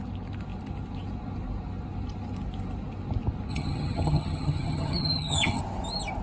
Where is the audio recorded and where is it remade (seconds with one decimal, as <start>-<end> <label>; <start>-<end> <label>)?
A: 0.0-3.5 recorded; 3.5-5.6 remade; 5.6-6.2 recorded